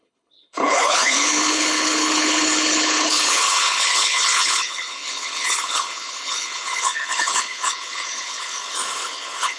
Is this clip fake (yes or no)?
yes